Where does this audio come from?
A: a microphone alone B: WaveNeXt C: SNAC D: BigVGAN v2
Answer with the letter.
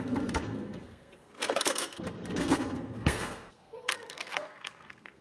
C